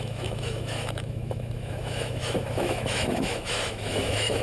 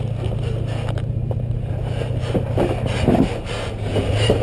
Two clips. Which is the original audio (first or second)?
second